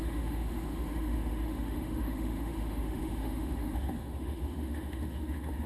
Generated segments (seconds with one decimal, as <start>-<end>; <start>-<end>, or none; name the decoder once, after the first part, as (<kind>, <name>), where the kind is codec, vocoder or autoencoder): 0.0-5.7 (autoencoder, DAC-VAE)